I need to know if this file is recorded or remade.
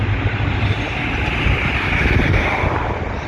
recorded